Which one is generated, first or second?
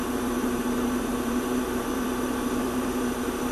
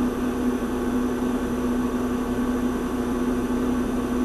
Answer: first